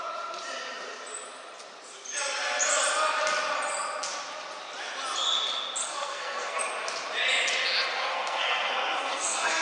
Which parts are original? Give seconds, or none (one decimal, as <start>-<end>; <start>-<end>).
0.0-5.8; 6.6-8.1